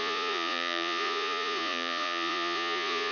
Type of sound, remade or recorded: remade